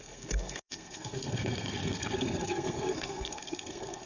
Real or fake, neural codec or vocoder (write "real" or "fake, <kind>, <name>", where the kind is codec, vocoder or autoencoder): fake, codec, SNAC